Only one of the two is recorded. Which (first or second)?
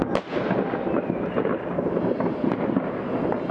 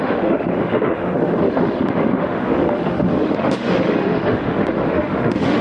first